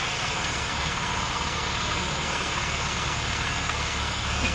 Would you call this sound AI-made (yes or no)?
yes